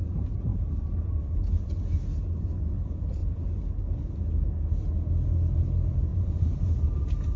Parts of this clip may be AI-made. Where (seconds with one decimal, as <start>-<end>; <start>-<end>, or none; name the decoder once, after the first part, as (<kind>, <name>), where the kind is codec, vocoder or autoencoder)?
0.5-1.6 (vocoder, BigVGAN v2); 6.1-6.8